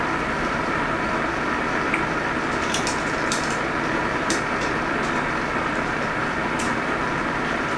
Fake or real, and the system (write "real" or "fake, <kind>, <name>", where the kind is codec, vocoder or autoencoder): fake, vocoder, BigVGAN v2